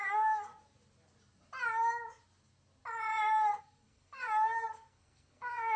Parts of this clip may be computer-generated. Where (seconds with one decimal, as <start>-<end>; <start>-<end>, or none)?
0.0-0.5; 3.6-5.8